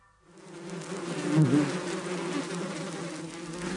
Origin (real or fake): real